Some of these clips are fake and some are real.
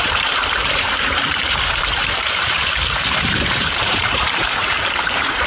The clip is fake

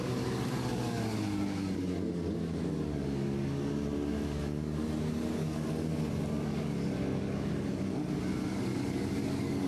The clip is fake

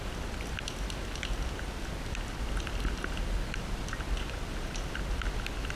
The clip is real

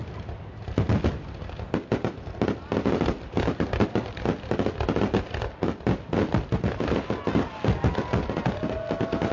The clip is real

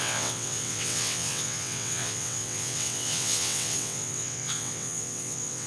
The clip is fake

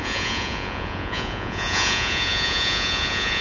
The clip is fake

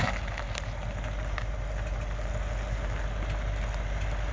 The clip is real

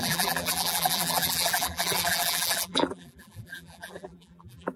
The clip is fake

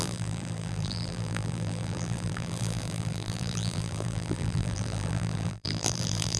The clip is fake